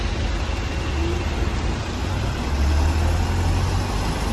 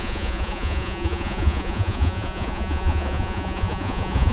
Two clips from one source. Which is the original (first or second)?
first